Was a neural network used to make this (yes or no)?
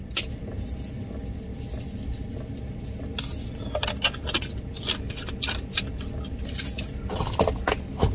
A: no